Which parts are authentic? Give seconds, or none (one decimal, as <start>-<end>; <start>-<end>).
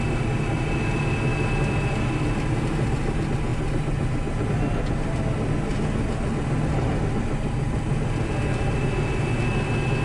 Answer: 0.0-10.0